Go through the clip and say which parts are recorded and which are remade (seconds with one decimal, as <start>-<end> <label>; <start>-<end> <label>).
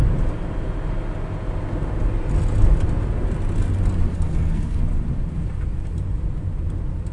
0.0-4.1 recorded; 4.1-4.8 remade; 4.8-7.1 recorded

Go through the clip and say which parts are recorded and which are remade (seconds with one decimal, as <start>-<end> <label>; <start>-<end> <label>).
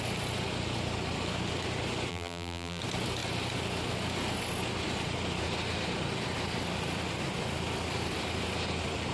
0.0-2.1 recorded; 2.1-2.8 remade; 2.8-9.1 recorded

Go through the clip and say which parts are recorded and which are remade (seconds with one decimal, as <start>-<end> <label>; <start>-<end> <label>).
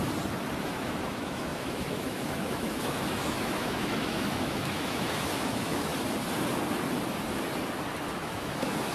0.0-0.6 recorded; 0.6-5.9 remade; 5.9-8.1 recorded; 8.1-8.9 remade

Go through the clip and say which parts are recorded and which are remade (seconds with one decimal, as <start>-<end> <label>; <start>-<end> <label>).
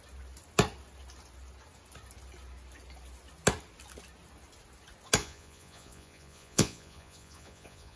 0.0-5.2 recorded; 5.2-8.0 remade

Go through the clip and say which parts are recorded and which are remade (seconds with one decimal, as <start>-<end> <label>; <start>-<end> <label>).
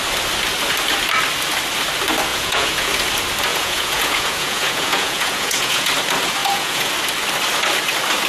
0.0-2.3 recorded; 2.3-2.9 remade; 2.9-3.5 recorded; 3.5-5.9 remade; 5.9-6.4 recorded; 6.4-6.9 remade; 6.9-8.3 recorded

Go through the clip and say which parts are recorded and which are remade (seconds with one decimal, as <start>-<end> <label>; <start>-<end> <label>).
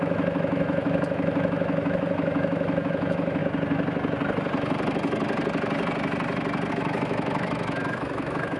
0.0-3.4 remade; 3.4-6.7 recorded; 6.7-8.6 remade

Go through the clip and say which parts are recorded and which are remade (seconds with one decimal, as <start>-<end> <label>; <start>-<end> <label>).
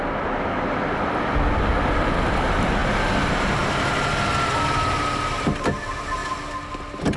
0.0-7.2 recorded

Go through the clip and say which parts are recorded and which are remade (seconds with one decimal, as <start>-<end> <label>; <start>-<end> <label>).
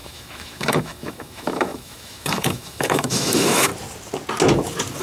0.0-3.7 remade; 3.7-5.0 recorded